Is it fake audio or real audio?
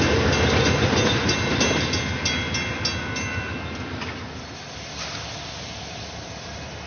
real